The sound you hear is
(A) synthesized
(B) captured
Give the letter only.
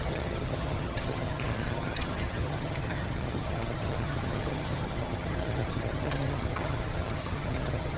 A